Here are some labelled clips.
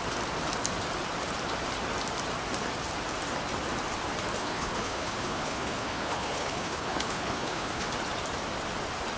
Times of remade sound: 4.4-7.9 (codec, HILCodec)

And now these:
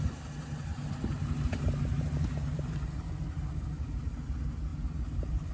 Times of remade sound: 4.7-5.5 (vocoder, BigVGAN v2)

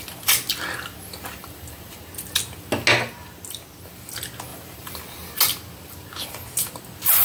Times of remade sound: 1.4-2.0 (vocoder, BigVGAN v2); 4.5-5.0

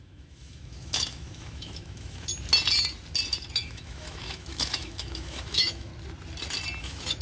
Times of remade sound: 0.0-2.3 (autoencoder, DAC-VAE); 3.5-5.9; 6.8-7.2

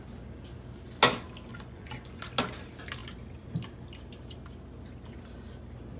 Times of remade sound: 1.5-2.2 (vocoder, Vocos)